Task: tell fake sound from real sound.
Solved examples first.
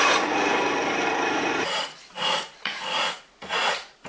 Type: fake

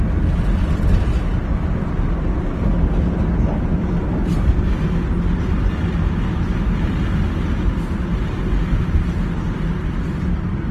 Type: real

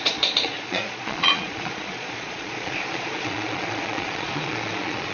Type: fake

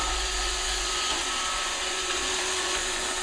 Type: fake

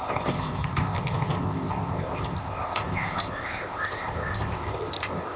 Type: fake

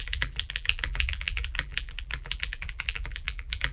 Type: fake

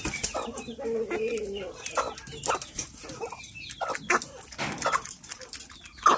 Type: real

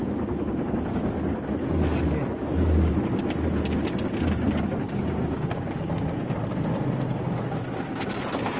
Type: real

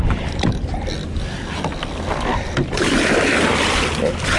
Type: real